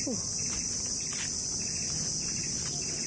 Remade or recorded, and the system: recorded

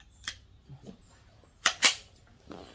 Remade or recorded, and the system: remade, vocoder, BigVGAN v2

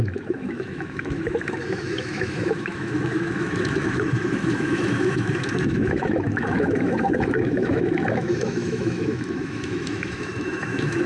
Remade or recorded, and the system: remade, autoencoder, DAC-VAE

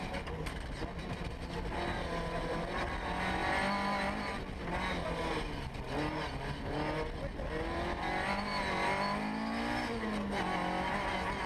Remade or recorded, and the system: recorded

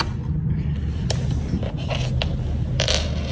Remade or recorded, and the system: recorded